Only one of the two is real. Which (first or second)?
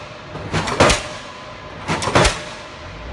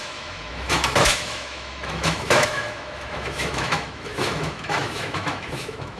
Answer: first